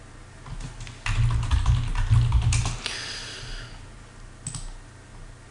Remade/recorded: recorded